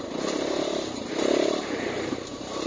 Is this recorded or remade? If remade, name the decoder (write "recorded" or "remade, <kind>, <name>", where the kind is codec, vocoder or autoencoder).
remade, vocoder, BigVGAN v2